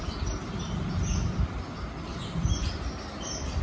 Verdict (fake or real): real